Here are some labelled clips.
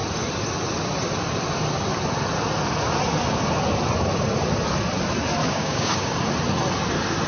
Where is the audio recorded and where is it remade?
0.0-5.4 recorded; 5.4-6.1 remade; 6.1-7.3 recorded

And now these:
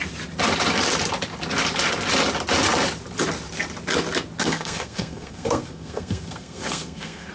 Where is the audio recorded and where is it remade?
0.0-4.4 recorded; 4.4-7.3 remade

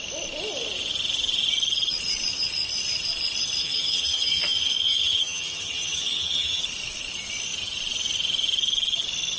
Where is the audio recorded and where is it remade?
0.0-3.6 recorded; 3.6-6.6 remade; 6.6-9.4 recorded